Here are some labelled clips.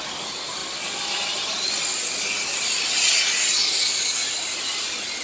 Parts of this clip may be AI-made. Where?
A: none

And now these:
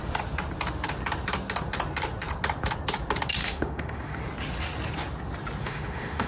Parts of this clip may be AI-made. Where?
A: 3.4-4.2; 5.6-6.3

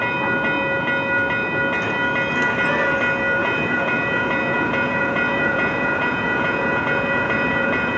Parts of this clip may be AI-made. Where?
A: 3.4-8.0

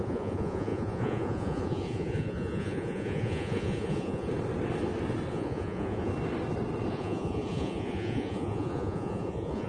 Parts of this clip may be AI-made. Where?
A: 0.0-4.3; 5.3-6.1; 6.9-9.7